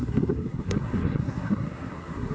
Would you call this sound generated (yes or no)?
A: yes